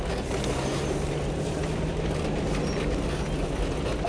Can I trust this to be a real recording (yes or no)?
yes